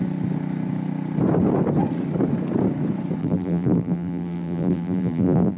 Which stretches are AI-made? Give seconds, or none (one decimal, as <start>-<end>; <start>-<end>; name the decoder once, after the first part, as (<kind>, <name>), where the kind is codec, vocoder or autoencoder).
3.2-5.6 (vocoder, BigVGAN v2)